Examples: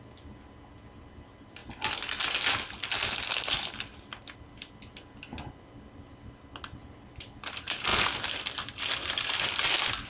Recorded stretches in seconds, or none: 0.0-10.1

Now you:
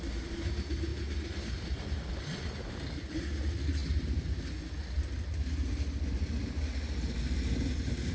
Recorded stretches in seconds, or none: 0.0-8.1

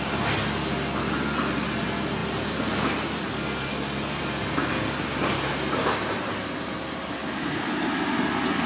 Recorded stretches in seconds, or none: 0.0-8.7